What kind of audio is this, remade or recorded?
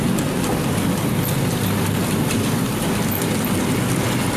recorded